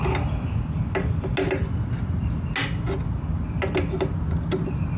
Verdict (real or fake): real